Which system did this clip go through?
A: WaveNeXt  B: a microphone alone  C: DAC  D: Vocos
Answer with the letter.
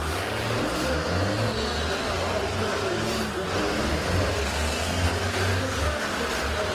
B